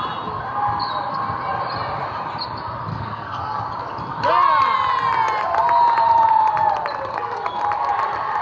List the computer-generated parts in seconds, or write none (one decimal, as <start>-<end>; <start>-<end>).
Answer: 2.9-3.6; 7.1-7.6